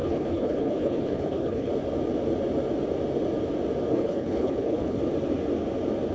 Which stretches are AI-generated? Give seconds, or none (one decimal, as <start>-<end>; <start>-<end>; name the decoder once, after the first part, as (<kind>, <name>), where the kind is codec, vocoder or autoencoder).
0.0-1.7 (codec, HILCodec); 3.9-5.0